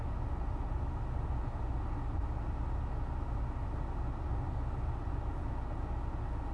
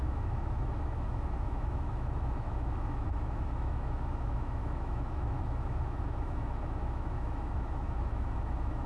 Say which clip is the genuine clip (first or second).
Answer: first